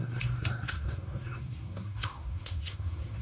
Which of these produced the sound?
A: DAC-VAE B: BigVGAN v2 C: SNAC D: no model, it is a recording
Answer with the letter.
C